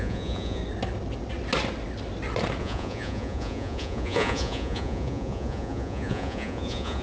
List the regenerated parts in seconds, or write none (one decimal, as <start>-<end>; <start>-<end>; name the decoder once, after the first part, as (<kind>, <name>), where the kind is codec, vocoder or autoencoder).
0.0-0.6 (vocoder, Vocos); 2.6-7.0